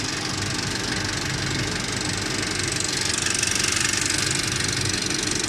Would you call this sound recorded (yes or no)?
yes